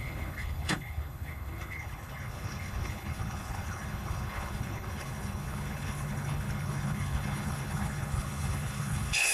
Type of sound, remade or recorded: remade